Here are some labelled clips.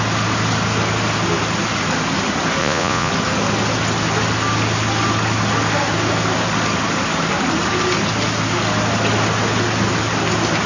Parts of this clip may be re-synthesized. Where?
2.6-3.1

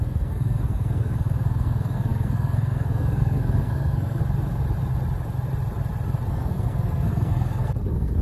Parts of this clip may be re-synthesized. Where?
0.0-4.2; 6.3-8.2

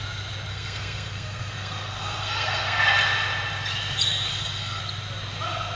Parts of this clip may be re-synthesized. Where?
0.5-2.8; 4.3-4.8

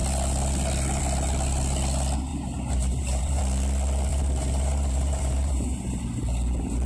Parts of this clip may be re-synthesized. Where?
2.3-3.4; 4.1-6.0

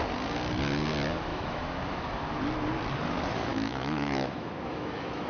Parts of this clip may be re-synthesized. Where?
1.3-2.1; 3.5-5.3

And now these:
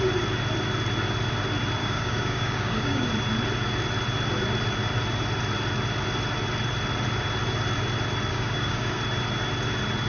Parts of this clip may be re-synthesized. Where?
1.8-3.1; 8.3-9.0